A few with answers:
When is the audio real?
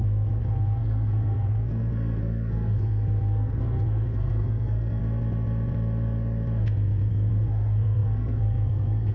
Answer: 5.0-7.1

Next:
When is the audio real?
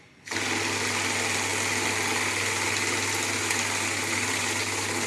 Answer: 0.0-5.1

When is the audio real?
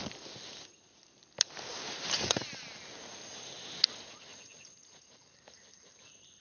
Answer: 0.0-4.3; 5.1-6.4